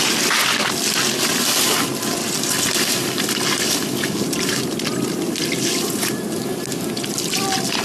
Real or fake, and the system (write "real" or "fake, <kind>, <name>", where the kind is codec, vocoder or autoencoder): real